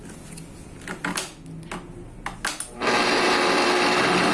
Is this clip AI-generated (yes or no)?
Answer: no